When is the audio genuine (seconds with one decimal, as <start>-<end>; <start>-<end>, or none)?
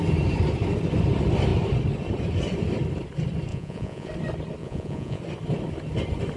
0.0-3.5; 4.1-4.6; 5.2-6.4